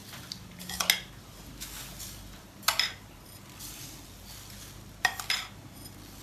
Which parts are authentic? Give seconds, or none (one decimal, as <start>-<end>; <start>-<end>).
0.0-6.2